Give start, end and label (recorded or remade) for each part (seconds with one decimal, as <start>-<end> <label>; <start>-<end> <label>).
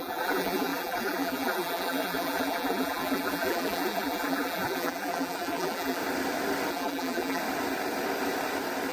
0.0-6.0 remade; 6.0-6.7 recorded; 6.7-7.4 remade; 7.4-8.9 recorded